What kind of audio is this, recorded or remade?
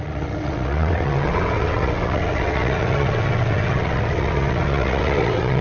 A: remade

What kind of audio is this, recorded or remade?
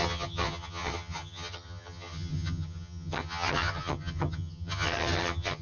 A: remade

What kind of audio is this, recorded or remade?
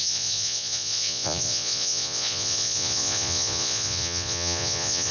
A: remade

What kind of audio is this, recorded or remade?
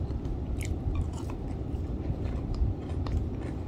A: remade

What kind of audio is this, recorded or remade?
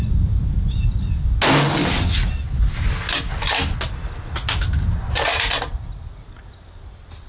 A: recorded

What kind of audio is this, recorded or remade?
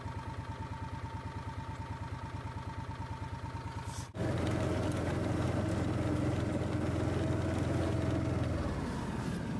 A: recorded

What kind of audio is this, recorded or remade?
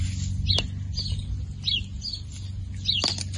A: recorded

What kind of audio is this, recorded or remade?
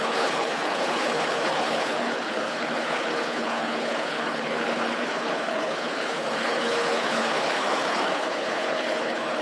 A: remade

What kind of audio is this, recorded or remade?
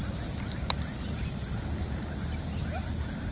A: recorded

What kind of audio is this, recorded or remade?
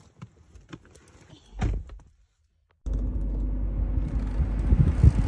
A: recorded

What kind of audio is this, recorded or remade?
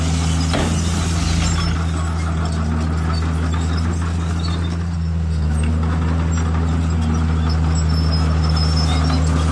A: recorded